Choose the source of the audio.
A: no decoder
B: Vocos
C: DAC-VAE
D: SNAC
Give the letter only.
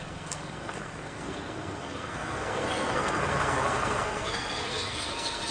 D